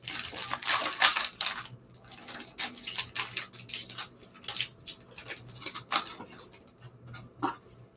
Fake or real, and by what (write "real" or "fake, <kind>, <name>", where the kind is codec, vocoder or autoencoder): real